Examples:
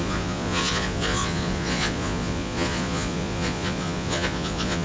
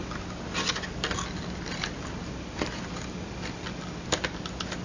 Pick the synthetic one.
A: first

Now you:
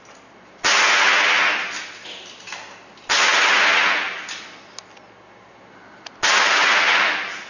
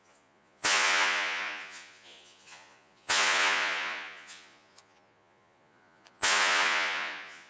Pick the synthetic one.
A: second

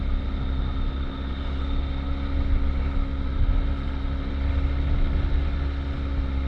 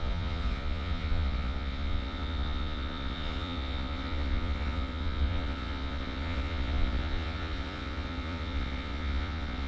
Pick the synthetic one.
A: second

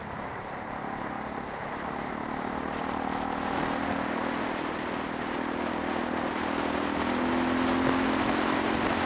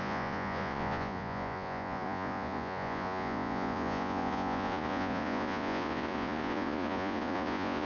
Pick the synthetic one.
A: second